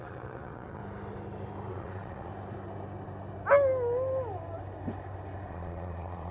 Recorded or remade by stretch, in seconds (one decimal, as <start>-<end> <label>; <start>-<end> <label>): 0.0-0.8 remade; 0.8-1.7 recorded; 1.7-2.3 remade; 2.3-5.5 recorded; 5.5-6.3 remade